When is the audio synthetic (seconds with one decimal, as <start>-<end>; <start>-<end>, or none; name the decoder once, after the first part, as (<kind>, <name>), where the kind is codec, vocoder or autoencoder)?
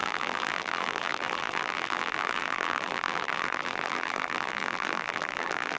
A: 0.0-5.8 (vocoder, BigVGAN v2)